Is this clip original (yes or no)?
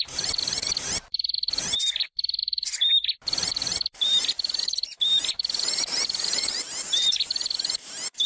no